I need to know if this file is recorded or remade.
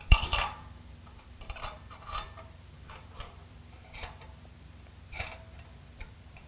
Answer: remade